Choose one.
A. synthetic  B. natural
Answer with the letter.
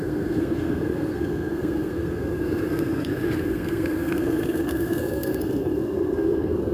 A